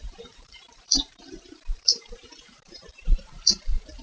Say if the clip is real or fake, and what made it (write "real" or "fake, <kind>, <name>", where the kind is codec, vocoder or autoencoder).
fake, vocoder, BigVGAN v2